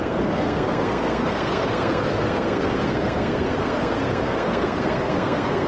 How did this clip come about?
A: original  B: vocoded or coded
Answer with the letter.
B